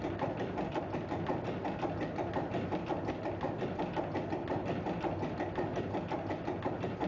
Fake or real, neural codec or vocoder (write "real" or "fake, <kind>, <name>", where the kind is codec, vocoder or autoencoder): real